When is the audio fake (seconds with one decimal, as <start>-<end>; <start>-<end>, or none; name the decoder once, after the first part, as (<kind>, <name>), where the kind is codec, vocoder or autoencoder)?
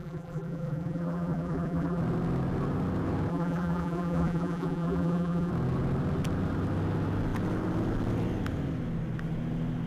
0.0-2.0 (vocoder, BigVGAN v2); 3.3-5.5